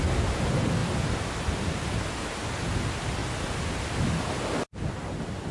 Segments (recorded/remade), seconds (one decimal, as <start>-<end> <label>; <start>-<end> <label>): 0.0-0.8 recorded; 0.8-1.8 remade; 1.8-3.2 recorded; 3.2-4.3 remade; 4.3-5.5 recorded